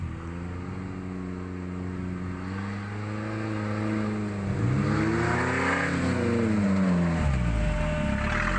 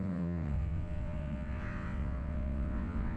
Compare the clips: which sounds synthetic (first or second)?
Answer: second